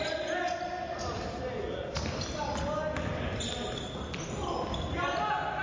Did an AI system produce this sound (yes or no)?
no